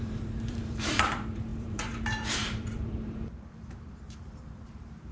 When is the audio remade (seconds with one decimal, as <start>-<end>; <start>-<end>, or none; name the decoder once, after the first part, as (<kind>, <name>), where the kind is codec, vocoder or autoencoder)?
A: 0.0-5.1 (vocoder, BigVGAN v2)